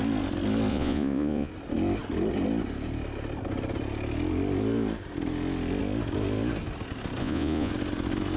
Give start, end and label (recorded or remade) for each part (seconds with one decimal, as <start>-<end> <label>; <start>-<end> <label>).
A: 0.0-0.7 recorded; 0.7-1.5 remade; 1.5-7.2 recorded; 7.2-7.7 remade; 7.7-8.4 recorded